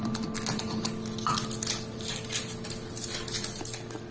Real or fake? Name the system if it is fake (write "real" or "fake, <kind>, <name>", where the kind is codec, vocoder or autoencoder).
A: real